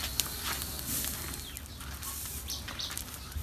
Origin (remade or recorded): recorded